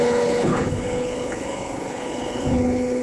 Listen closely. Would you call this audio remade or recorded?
remade